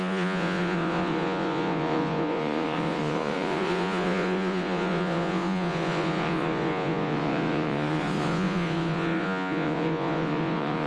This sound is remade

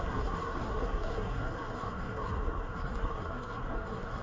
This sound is remade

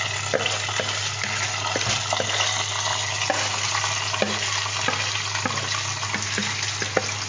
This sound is recorded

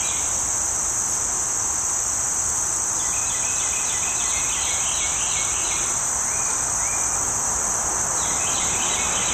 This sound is recorded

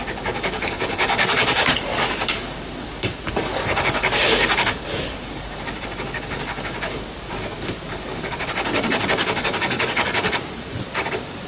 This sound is remade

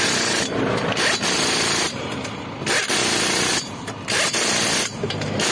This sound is recorded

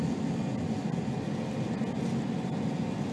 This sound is recorded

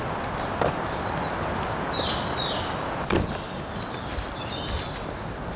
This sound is recorded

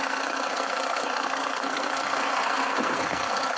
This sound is remade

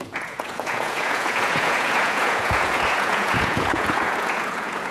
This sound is remade